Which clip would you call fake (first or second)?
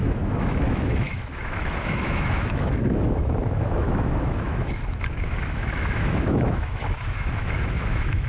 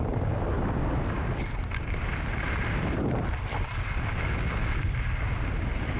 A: first